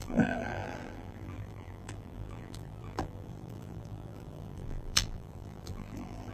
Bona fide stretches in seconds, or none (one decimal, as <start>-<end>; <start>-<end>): none